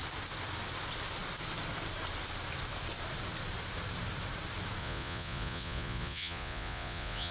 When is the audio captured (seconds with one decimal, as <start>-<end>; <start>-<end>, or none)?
0.0-4.8